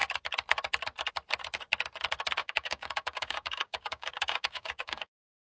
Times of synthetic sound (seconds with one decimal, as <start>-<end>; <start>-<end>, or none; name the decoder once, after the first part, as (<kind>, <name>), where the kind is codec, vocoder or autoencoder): 2.4-5.5 (codec, DAC)